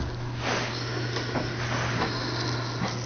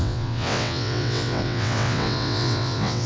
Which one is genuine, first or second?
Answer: first